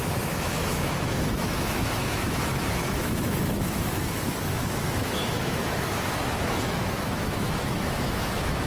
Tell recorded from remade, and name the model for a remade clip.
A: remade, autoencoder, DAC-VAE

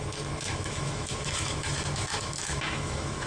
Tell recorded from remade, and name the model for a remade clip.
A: remade, autoencoder, DAC-VAE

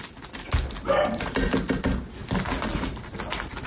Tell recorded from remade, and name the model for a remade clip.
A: recorded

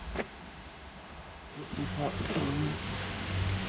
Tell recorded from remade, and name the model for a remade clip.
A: remade, autoencoder, DAC-VAE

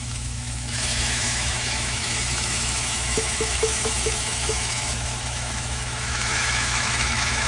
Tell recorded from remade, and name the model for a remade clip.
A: remade, autoencoder, DAC-VAE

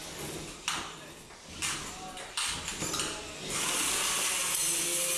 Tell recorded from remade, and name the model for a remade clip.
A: recorded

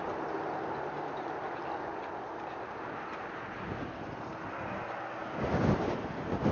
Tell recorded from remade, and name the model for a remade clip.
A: recorded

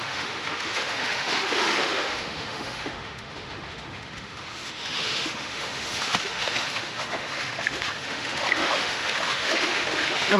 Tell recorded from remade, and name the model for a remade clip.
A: remade, autoencoder, DAC-VAE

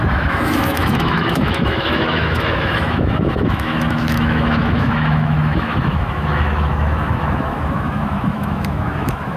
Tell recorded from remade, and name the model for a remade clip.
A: remade, autoencoder, DAC-VAE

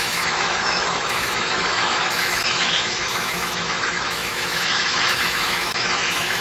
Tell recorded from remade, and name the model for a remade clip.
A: remade, autoencoder, DAC-VAE